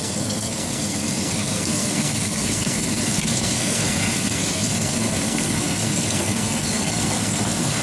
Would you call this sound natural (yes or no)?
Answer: no